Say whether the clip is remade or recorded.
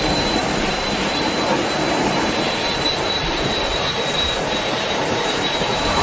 remade